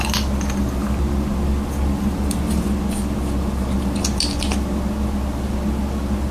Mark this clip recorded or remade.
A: recorded